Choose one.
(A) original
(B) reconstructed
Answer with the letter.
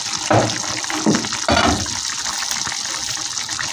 A